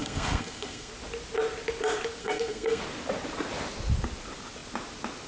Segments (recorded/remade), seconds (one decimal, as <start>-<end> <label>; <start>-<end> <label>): 0.0-0.9 remade; 0.9-2.2 recorded; 2.2-2.8 remade; 2.8-5.3 recorded